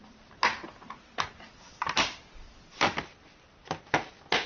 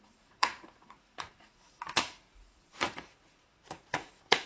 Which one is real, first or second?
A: first